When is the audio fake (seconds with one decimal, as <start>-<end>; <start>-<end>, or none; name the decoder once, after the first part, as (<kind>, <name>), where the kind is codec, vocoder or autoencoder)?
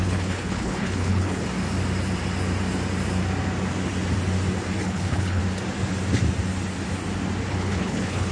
0.0-1.4 (codec, HILCodec); 4.8-5.4; 7.5-8.3